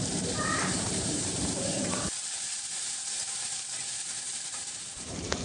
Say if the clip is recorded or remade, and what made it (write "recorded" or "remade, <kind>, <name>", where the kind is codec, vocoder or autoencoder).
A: remade, vocoder, BigVGAN v2